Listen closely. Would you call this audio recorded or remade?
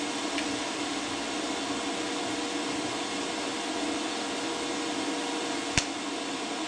recorded